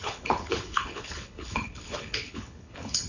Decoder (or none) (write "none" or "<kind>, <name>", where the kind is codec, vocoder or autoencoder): codec, HILCodec